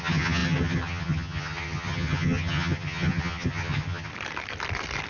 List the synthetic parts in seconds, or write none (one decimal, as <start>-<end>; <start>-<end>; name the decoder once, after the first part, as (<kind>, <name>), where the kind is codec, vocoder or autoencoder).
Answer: 0.0-4.1 (vocoder, HiFi-GAN)